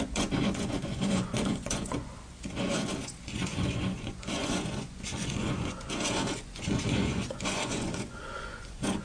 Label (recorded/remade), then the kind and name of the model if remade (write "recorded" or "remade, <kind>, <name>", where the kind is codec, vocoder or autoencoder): remade, vocoder, Vocos